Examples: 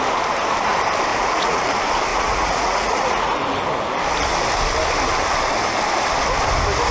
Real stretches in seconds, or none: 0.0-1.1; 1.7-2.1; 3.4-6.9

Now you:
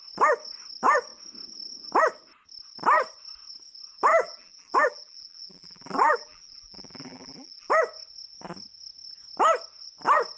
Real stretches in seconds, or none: 0.0-4.1; 7.7-10.4

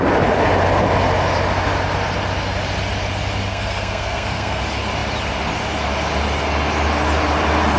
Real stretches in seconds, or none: 0.0-3.5; 4.6-7.8

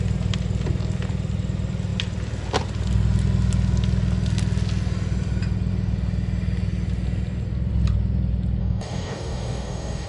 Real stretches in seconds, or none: 0.0-8.6

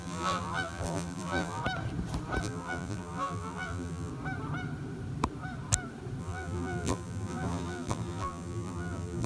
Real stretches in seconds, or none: 1.6-2.4; 4.1-6.2